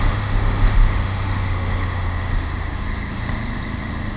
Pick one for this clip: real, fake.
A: fake